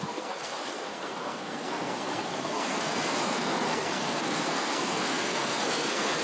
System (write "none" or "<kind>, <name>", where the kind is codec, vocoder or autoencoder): codec, SNAC